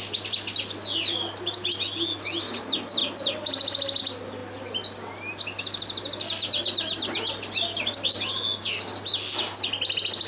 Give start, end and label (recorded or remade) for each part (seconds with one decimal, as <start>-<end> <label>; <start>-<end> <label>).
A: 0.0-3.0 recorded; 3.0-4.0 remade; 4.0-10.3 recorded